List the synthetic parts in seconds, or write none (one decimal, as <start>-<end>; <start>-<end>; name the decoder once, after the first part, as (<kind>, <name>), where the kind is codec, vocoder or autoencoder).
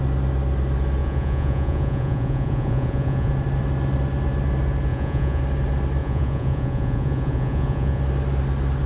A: 1.0-3.3 (vocoder, Vocos); 4.9-5.4; 6.0-8.0